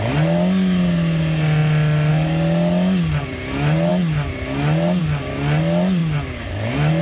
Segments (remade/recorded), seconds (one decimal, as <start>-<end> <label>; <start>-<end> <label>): 0.0-7.0 recorded

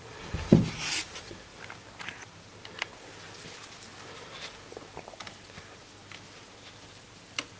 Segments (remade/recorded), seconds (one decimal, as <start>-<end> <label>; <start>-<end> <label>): 0.0-7.6 recorded

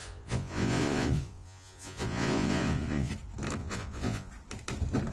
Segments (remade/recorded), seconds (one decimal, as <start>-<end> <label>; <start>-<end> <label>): 0.0-3.1 remade; 3.1-3.6 recorded; 3.6-4.3 remade; 4.3-5.1 recorded

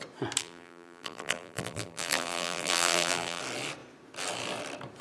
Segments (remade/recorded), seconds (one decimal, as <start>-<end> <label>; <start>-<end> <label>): 0.0-0.4 recorded; 0.4-3.4 remade; 3.4-5.0 recorded

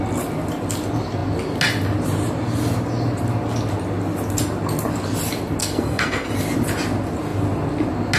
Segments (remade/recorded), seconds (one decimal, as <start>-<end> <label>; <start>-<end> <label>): 0.0-5.6 recorded; 5.6-6.3 remade; 6.3-8.2 recorded

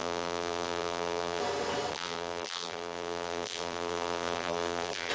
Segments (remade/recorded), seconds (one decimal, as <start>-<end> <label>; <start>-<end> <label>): 0.0-1.4 remade; 1.4-1.9 recorded; 1.9-5.1 remade

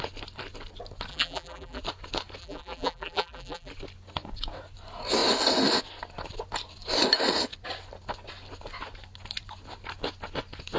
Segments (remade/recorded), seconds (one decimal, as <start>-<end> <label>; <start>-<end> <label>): 0.0-1.1 recorded; 1.1-1.8 remade; 1.8-2.4 recorded; 2.4-3.7 remade; 3.7-10.8 recorded